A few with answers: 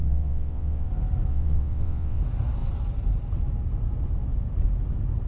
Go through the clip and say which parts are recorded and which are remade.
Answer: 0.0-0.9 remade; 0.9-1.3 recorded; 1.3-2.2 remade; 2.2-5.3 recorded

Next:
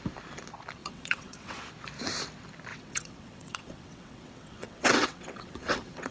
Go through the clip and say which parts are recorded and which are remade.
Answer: 0.0-0.8 recorded; 0.8-1.6 remade; 1.6-2.7 recorded; 2.7-6.1 remade

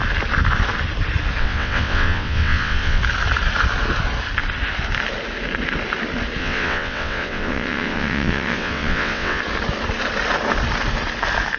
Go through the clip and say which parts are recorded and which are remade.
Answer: 0.0-1.4 recorded; 1.4-3.0 remade; 3.0-6.4 recorded; 6.4-9.4 remade; 9.4-11.6 recorded

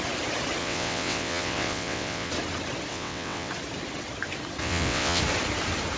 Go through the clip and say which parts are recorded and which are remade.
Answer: 0.0-0.6 recorded; 0.6-2.3 remade; 2.3-2.9 recorded; 2.9-3.5 remade; 3.5-4.6 recorded; 4.6-5.2 remade; 5.2-6.0 recorded

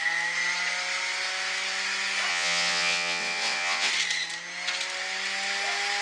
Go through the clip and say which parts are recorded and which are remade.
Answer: 0.0-2.3 recorded; 2.3-3.9 remade; 3.9-6.0 recorded

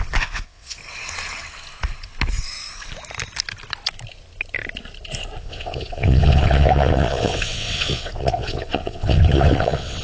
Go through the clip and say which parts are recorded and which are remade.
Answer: 0.0-0.8 remade; 0.8-5.4 recorded; 5.4-10.0 remade

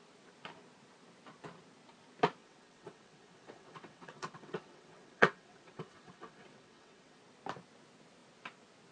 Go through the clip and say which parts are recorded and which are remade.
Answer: 0.0-2.4 recorded; 2.4-7.2 remade; 7.2-8.9 recorded